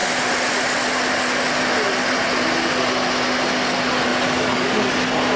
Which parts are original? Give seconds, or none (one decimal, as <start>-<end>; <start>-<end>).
0.0-4.1; 4.9-5.4